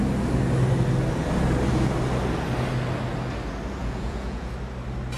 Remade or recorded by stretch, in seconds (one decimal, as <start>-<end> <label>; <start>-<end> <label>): 0.0-3.8 recorded; 3.8-4.5 remade; 4.5-5.2 recorded

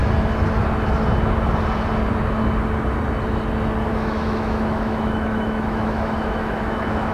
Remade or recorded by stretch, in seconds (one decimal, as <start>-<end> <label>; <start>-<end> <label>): 0.0-3.9 recorded; 3.9-7.1 remade

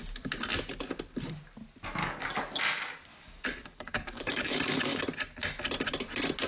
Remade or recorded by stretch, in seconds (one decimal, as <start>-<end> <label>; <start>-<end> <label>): 0.0-2.0 recorded; 2.0-2.6 remade; 2.6-3.1 recorded; 3.1-5.0 remade; 5.0-6.5 recorded

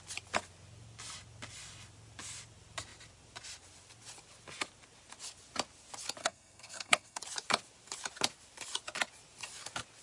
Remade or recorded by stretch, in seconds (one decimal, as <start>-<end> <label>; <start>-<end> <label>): 0.0-6.2 recorded; 6.2-7.2 remade; 7.2-10.0 recorded

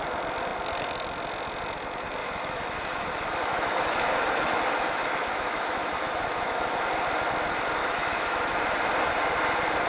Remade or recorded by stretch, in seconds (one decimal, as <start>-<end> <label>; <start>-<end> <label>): 0.0-2.2 recorded; 2.2-6.8 remade; 6.8-7.8 recorded; 7.8-8.6 remade; 8.6-9.9 recorded

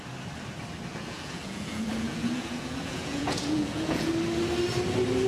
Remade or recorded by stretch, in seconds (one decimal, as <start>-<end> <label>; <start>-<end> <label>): 0.0-0.9 recorded; 0.9-4.1 remade; 4.1-5.3 recorded

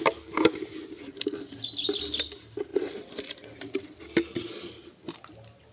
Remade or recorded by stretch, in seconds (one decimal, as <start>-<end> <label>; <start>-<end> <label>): 0.0-5.7 recorded